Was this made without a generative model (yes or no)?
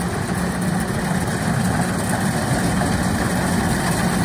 yes